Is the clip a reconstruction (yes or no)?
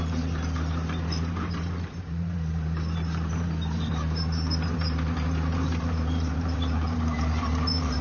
yes